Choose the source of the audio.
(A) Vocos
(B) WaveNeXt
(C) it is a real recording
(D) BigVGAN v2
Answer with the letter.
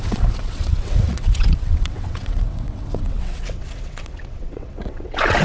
B